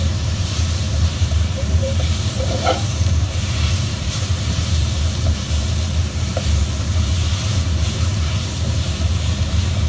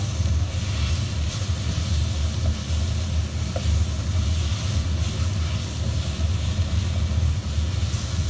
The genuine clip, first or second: second